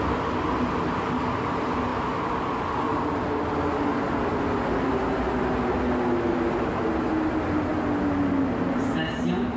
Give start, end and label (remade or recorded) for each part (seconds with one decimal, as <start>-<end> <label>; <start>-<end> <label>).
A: 0.0-9.6 recorded